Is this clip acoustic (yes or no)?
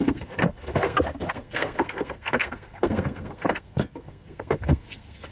no